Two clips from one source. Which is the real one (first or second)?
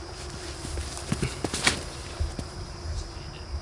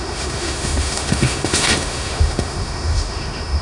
first